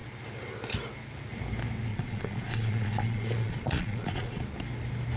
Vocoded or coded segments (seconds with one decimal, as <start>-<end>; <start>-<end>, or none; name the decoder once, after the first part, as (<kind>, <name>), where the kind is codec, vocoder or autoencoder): 1.9-4.4 (vocoder, Vocos)